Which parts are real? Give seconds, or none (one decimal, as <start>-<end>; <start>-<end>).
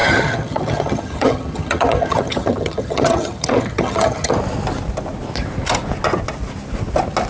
4.4-7.3